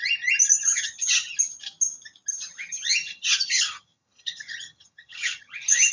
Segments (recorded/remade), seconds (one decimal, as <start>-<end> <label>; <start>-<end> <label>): 0.0-0.6 recorded; 0.6-1.3 remade; 1.3-2.3 recorded; 2.3-5.9 remade